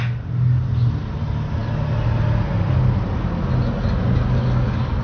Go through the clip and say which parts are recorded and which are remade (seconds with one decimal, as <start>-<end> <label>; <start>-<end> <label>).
0.0-5.0 recorded